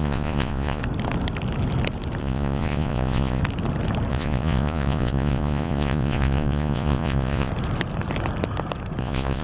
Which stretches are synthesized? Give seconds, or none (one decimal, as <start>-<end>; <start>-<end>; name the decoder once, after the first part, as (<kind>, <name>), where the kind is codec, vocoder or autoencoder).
0.0-0.8 (vocoder, Vocos); 2.2-3.4; 4.1-7.5; 9.0-9.4